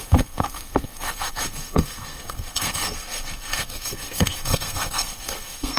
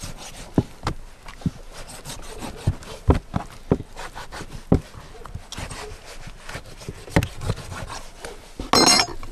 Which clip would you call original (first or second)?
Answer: second